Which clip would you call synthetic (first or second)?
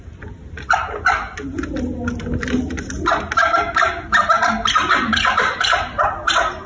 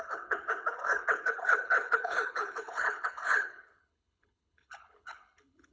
second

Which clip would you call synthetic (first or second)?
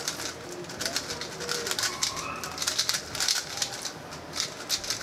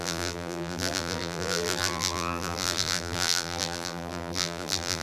second